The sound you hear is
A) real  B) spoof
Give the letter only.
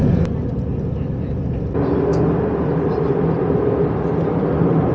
A